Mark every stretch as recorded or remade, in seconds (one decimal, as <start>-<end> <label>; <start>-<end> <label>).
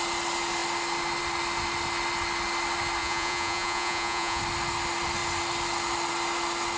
0.0-3.0 recorded; 3.0-4.4 remade; 4.4-6.8 recorded